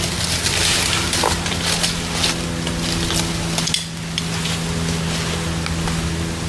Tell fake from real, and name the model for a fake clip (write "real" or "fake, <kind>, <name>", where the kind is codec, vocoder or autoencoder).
real